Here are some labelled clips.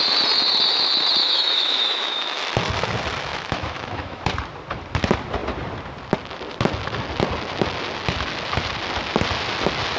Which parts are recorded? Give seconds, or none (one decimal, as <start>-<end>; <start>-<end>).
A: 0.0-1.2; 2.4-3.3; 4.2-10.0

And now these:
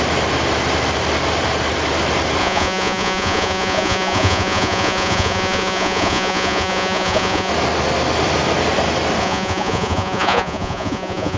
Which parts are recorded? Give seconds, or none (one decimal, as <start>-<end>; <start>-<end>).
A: 0.0-2.4; 7.5-9.2

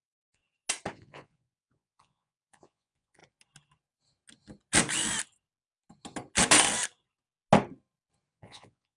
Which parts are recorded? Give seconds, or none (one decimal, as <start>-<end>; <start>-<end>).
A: 0.4-0.9; 3.2-8.3